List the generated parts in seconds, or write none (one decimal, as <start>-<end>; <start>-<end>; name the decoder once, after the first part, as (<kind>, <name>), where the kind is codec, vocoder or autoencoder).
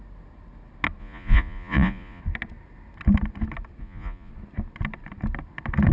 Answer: 1.0-2.2 (vocoder, Vocos); 3.8-4.3